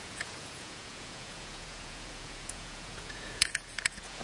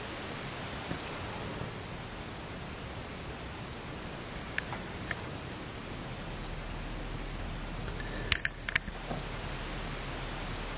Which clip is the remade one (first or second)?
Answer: first